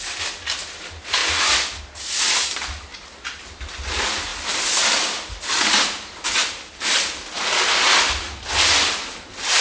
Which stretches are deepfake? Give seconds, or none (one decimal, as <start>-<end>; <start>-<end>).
none